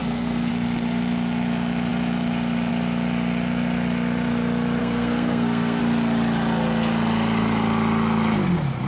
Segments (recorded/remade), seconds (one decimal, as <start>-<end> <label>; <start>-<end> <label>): 0.0-0.5 remade; 0.5-4.8 recorded; 4.8-5.8 remade; 5.8-8.9 recorded